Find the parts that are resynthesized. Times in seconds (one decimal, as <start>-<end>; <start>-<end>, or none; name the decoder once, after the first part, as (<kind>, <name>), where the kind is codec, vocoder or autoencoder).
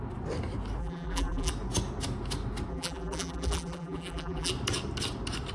0.8-1.5 (vocoder, BigVGAN v2); 2.7-4.5